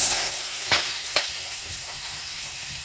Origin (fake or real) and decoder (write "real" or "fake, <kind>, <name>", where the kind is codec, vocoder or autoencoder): fake, codec, SNAC